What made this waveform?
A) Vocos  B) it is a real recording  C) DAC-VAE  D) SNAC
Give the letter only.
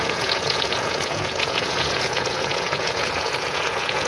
A